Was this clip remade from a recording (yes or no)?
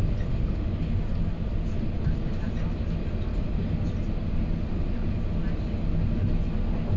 no